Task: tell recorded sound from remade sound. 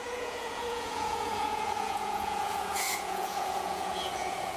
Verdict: remade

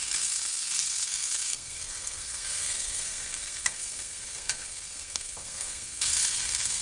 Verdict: remade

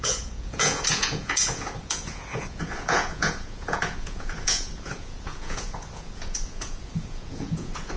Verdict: remade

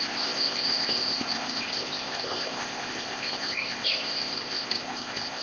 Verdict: remade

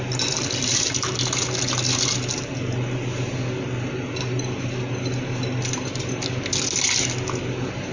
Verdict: recorded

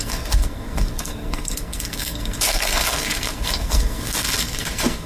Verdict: remade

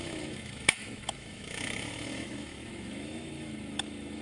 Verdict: remade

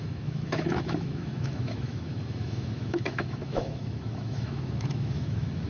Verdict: remade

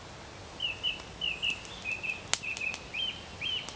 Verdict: recorded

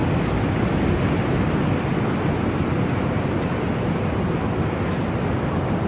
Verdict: recorded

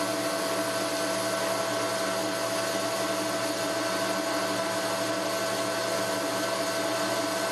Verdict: recorded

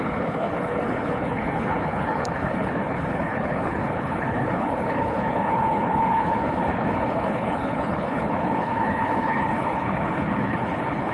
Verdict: remade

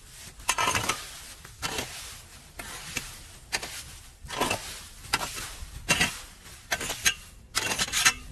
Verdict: recorded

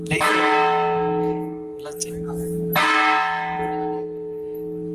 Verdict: recorded